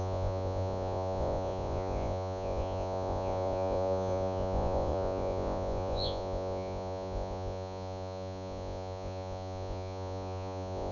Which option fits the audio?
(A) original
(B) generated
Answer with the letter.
B